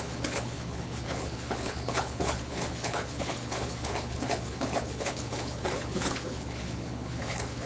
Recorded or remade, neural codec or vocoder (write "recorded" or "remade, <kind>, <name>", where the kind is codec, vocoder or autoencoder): remade, codec, HILCodec